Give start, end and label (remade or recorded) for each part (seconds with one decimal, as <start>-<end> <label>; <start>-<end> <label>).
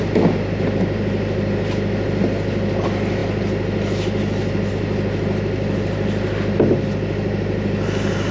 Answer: 0.0-8.3 recorded